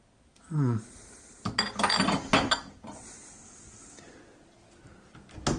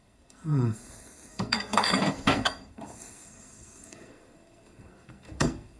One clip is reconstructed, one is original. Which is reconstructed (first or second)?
second